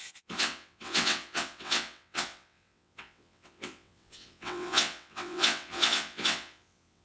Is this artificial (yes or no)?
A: yes